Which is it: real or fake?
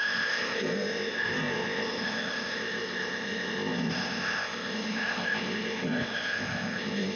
fake